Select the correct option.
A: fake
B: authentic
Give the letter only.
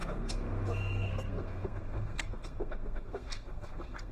A